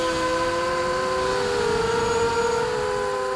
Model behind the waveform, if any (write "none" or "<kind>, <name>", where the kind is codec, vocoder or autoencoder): none